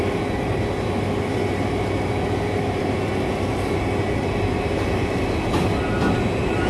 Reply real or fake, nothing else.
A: real